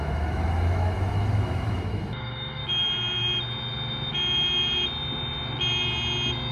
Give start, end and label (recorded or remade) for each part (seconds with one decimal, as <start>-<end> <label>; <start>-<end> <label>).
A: 0.0-2.6 remade; 2.6-6.5 recorded